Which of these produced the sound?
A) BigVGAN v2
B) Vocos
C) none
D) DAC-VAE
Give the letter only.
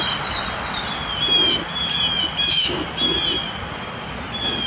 C